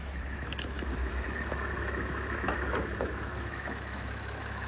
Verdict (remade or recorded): remade